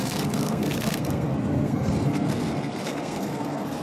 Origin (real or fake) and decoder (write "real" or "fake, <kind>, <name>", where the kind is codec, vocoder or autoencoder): fake, codec, SNAC